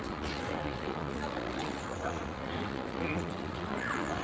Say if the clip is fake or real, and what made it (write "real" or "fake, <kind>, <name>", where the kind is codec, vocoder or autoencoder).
fake, vocoder, WaveNeXt